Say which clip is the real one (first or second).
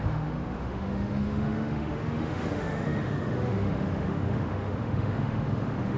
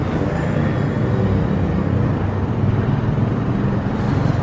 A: second